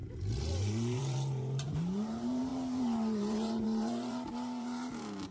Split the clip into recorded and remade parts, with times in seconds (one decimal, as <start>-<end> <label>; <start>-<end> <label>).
0.0-5.3 remade